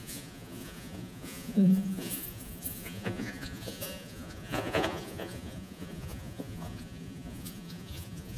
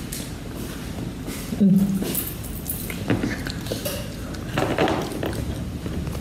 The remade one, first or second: first